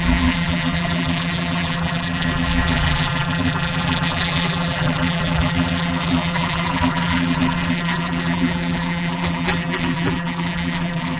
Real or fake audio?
fake